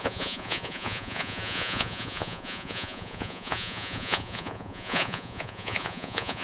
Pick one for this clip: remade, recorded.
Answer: remade